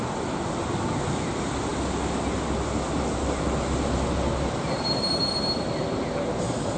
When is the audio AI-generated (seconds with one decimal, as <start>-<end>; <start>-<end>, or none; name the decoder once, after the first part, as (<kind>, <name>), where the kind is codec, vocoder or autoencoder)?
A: none